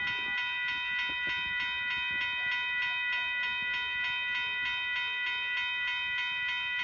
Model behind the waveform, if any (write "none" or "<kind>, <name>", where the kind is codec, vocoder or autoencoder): none